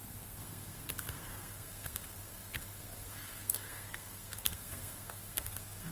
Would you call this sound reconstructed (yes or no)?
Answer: yes